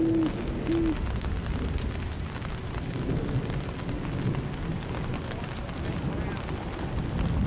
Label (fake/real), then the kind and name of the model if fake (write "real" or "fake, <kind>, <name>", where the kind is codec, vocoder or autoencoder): real